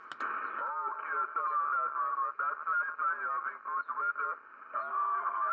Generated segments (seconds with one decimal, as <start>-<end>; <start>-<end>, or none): 4.9-5.5